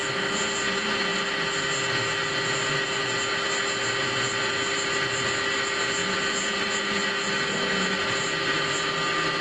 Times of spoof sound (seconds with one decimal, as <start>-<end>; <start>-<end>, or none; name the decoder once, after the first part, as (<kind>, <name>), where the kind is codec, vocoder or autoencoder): none